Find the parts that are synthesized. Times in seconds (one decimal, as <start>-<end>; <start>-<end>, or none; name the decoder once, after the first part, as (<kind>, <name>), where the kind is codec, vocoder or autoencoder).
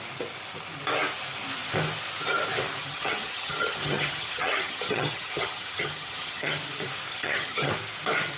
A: 2.8-6.6 (vocoder, HiFi-GAN); 7.1-7.7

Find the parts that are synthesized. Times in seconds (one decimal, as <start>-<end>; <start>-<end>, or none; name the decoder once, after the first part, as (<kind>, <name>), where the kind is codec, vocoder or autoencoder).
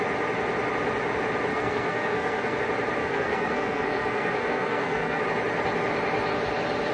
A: 1.5-2.6 (codec, SNAC); 3.0-5.2